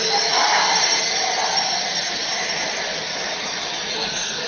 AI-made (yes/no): no